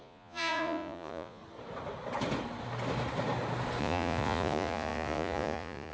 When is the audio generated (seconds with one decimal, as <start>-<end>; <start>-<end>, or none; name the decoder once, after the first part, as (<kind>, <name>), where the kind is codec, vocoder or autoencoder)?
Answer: 0.0-1.4 (vocoder, Vocos); 3.8-5.9